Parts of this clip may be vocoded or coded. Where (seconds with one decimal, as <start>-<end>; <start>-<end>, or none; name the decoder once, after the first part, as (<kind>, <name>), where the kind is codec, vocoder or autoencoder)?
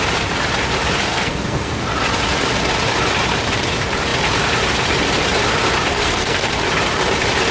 1.1-1.8 (codec, SNAC); 5.9-6.5